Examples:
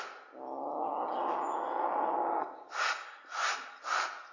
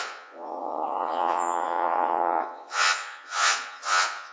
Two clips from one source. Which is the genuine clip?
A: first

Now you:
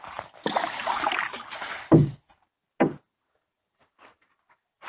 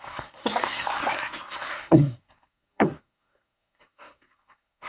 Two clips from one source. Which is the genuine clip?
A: first